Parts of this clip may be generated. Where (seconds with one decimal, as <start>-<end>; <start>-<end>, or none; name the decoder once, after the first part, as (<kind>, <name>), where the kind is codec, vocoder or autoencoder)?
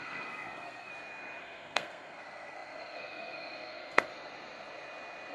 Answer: 0.0-0.9 (codec, SNAC); 1.4-4.1